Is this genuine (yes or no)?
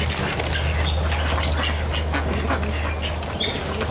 yes